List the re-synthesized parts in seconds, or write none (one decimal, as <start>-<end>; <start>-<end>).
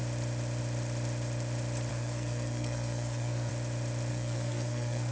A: 1.9-3.5; 4.1-5.1